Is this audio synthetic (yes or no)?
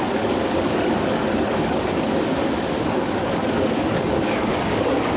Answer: yes